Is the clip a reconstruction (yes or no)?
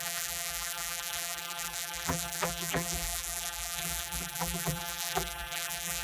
yes